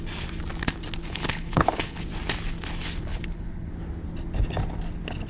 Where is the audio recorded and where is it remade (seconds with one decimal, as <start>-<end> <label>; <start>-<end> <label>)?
0.0-1.0 recorded; 1.0-2.0 remade; 2.0-3.1 recorded; 3.1-3.7 remade; 3.7-5.3 recorded